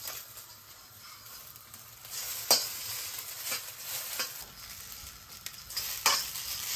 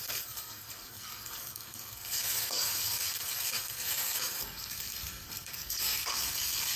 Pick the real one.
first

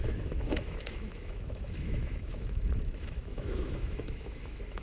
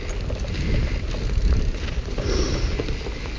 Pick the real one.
second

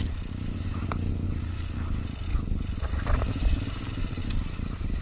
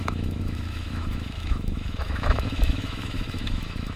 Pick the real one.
first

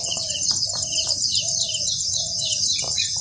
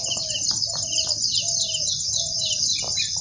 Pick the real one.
second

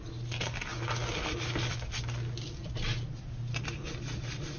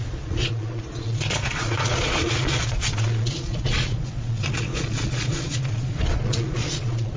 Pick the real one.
first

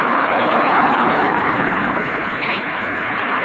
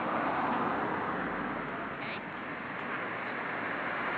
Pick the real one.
second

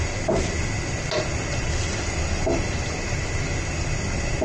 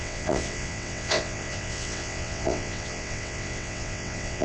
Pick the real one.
first